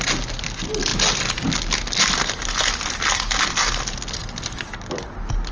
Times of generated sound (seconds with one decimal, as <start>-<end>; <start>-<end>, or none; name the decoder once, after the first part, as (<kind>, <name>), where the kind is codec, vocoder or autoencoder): none